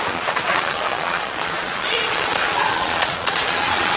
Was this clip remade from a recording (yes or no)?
yes